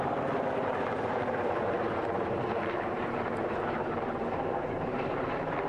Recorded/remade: remade